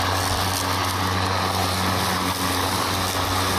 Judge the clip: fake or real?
real